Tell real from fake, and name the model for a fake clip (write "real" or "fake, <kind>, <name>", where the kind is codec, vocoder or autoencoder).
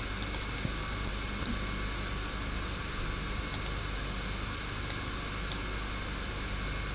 real